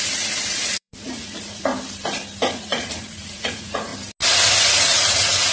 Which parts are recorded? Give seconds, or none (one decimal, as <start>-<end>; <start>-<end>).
1.7-2.5; 3.9-4.7